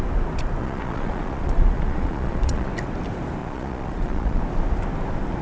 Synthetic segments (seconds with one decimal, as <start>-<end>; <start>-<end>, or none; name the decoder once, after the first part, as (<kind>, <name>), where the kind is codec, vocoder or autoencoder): 0.6-2.7 (vocoder, Vocos); 3.4-4.4